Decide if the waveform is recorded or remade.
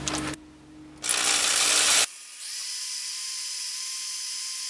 recorded